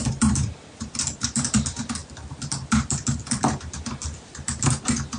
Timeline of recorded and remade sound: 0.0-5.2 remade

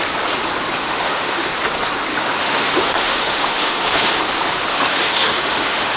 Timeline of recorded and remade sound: 0.0-0.8 recorded; 0.8-1.5 remade; 1.5-2.1 recorded; 2.1-4.2 remade; 4.2-4.7 recorded; 4.7-6.0 remade

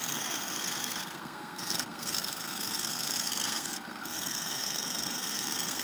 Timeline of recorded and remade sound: 0.0-5.8 remade

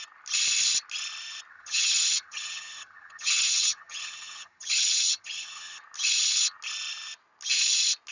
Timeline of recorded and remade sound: 0.0-1.5 recorded; 1.5-5.8 remade; 5.8-8.1 recorded